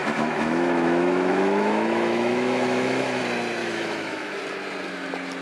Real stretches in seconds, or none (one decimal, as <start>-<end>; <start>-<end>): 3.2-3.6; 4.4-5.4